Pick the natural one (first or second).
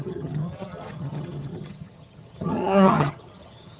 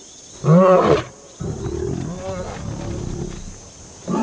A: second